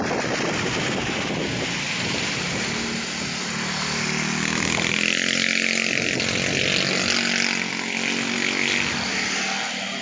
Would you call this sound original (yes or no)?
yes